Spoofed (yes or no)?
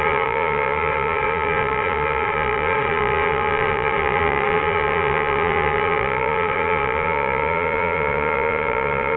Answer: yes